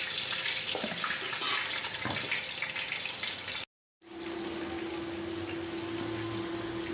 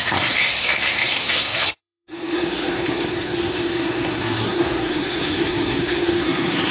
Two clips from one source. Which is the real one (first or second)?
first